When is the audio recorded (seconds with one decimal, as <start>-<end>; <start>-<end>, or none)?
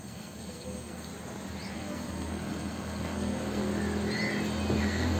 1.1-1.7; 3.7-4.8